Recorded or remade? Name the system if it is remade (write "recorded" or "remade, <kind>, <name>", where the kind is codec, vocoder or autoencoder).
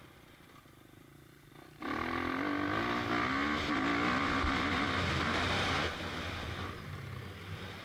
recorded